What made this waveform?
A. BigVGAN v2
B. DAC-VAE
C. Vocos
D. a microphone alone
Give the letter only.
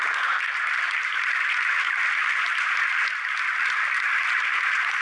D